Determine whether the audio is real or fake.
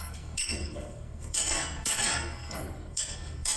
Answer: fake